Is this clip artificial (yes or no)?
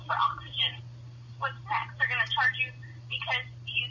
no